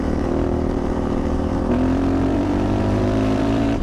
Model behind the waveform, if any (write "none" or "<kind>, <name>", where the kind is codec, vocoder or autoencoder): vocoder, BigVGAN v2